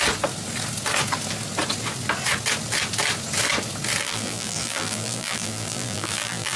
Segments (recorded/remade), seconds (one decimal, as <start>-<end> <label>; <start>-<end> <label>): 0.0-4.0 recorded; 4.0-6.6 remade